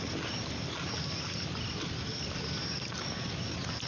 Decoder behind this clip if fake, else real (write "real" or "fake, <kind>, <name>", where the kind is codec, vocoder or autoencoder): real